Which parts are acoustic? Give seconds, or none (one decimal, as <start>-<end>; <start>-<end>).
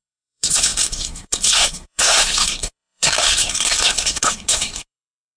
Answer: none